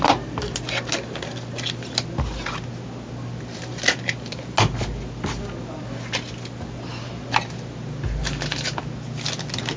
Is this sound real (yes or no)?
yes